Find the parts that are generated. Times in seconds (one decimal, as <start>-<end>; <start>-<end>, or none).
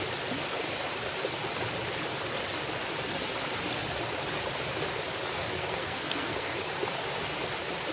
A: 5.4-6.7